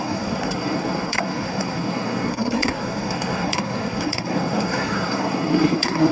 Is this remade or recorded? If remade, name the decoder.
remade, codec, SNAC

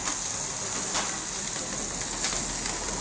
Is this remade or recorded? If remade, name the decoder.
recorded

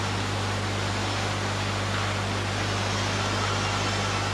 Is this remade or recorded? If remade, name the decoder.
recorded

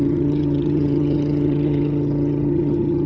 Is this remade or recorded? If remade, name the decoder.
remade, vocoder, HiFi-GAN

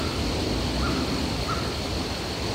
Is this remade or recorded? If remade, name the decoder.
recorded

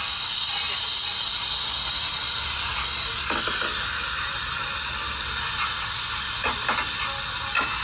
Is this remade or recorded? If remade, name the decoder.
recorded